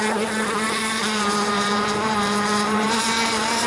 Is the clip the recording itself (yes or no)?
no